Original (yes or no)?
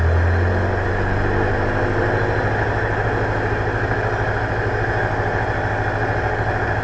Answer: yes